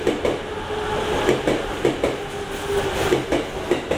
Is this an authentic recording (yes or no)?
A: yes